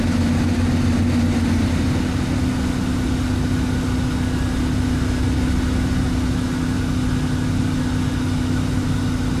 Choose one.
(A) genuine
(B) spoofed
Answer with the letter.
A